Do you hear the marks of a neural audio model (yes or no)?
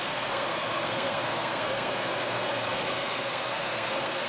yes